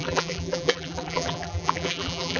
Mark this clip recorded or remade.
remade